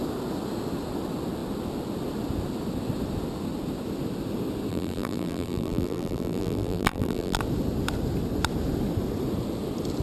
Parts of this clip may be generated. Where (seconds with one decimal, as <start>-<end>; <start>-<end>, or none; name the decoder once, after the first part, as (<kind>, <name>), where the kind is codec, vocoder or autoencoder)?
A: 4.7-7.4 (vocoder, BigVGAN v2)